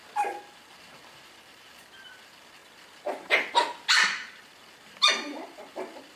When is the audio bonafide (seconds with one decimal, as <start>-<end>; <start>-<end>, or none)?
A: 0.0-6.2